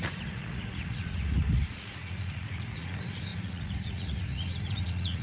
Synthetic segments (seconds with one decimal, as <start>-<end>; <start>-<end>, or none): 0.0-5.2